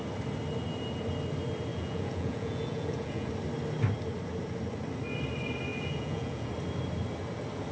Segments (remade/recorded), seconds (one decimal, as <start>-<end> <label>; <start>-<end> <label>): 0.0-1.7 recorded; 1.7-3.3 remade; 3.3-5.7 recorded; 5.7-6.5 remade; 6.5-7.7 recorded

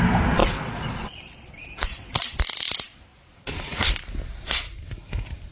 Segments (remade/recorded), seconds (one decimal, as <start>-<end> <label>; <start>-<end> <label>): 0.0-0.4 recorded; 0.4-1.5 remade; 1.5-1.9 recorded; 1.9-2.4 remade; 2.4-3.1 recorded; 3.1-3.9 remade; 3.9-5.5 recorded